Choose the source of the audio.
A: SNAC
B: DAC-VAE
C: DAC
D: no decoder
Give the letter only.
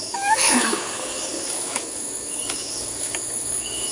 C